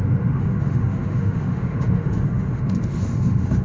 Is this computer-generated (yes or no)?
yes